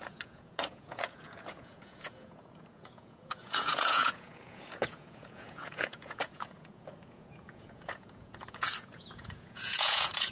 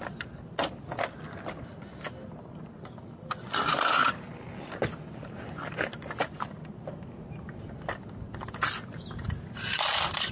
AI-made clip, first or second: first